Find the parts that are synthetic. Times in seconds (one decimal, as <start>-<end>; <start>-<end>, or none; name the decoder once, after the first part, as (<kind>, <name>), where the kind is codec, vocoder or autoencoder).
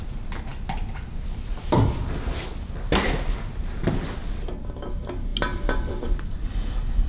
none